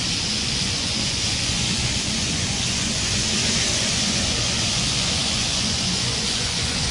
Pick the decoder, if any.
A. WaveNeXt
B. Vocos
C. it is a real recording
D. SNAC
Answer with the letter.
B